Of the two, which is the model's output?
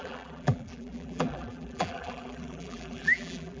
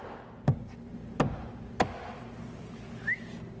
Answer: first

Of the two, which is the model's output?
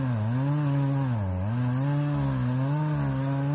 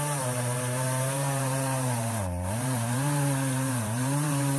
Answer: second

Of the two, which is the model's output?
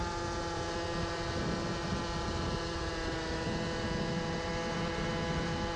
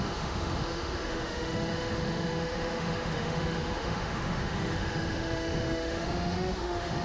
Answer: second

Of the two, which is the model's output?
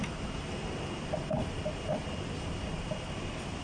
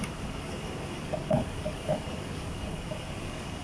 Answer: second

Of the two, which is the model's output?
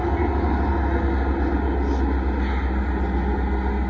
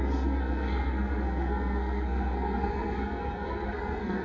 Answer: second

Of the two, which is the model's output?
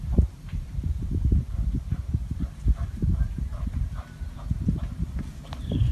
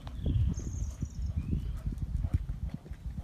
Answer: first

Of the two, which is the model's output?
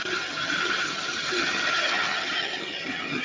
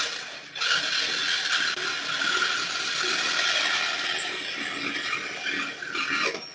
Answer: first